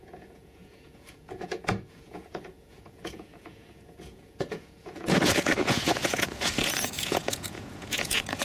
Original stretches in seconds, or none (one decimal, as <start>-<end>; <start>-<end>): none